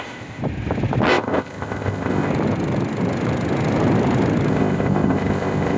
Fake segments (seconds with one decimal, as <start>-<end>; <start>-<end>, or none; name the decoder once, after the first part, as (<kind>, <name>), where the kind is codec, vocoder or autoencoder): 0.0-0.4 (codec, ZipCodec); 1.1-2.3; 4.5-5.8

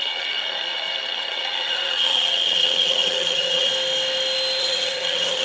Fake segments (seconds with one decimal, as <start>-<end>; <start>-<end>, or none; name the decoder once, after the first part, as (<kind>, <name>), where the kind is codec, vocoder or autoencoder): 0.0-3.7 (vocoder, HiFi-GAN); 4.6-5.4

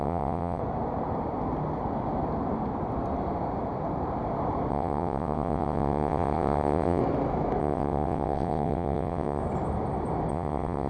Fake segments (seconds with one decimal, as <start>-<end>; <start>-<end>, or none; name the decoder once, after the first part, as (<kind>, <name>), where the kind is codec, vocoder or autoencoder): 0.0-0.6 (vocoder, WaveNeXt); 4.7-7.0; 7.6-9.4; 10.3-10.9

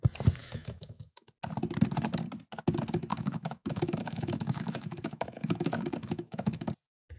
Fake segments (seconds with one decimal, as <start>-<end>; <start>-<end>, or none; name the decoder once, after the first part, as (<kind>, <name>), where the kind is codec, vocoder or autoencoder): 0.4-1.3 (autoencoder, DAC-VAE); 3.1-6.7

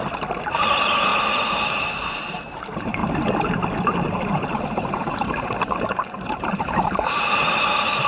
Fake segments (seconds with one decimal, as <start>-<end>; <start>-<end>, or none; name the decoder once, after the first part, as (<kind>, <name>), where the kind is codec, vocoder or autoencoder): 0.0-3.0 (vocoder, BigVGAN v2); 4.0-8.1

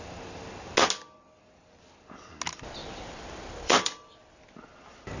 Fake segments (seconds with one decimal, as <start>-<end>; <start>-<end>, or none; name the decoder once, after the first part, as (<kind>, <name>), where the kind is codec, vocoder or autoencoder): 2.8-4.4 (vocoder, BigVGAN v2)